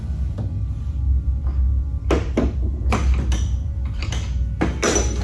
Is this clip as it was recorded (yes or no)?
yes